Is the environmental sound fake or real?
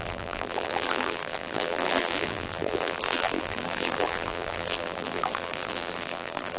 fake